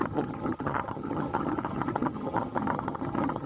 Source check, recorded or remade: remade